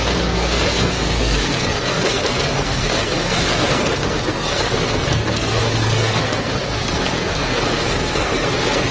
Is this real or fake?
fake